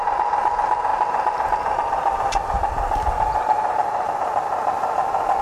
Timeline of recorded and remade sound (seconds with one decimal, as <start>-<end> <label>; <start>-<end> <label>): 0.0-5.4 recorded